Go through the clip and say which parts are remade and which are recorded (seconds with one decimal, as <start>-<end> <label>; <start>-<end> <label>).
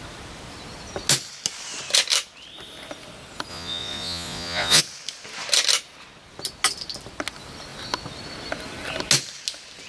0.0-3.5 recorded; 3.5-4.8 remade; 4.8-9.9 recorded